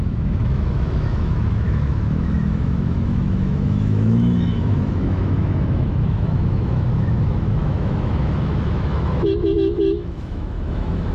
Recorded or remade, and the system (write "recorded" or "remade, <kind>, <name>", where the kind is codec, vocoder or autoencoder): remade, autoencoder, DAC-VAE